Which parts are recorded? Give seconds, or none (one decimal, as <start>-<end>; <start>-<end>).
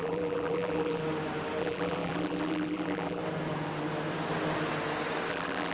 1.0-1.6; 3.2-5.3